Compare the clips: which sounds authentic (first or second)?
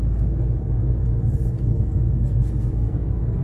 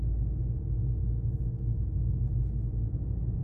second